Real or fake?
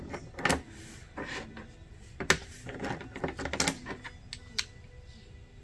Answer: real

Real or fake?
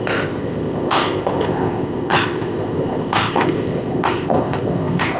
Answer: fake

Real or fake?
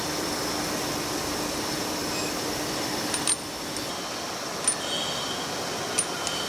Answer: real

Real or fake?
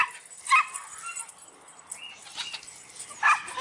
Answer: real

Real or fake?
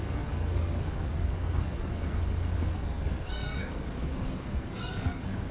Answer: fake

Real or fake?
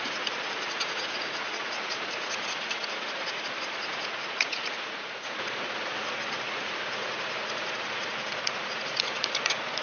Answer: fake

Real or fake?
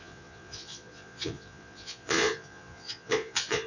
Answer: fake